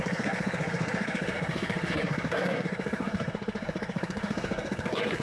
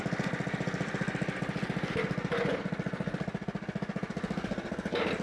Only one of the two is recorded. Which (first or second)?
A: second